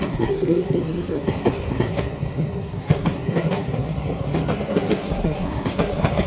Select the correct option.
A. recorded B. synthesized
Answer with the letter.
B